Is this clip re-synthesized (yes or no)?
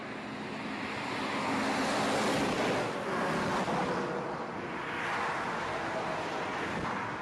no